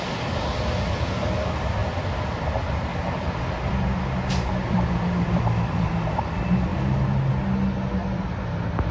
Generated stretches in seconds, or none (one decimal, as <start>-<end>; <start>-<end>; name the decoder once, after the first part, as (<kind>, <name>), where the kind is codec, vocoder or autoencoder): 1.8-2.5 (vocoder, BigVGAN v2); 2.9-3.7; 4.6-6.3